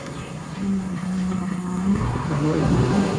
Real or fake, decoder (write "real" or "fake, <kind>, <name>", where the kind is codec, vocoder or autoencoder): fake, codec, SNAC